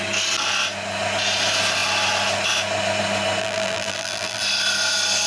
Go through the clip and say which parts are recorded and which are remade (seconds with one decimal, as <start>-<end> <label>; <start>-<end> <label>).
0.0-3.4 recorded; 3.4-4.4 remade; 4.4-5.3 recorded